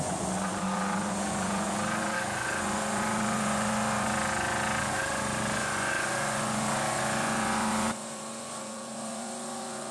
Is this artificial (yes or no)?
yes